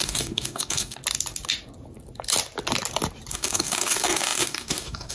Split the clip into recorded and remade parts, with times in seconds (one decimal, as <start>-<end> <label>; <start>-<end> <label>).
0.0-1.0 remade; 1.0-3.3 recorded; 3.3-5.1 remade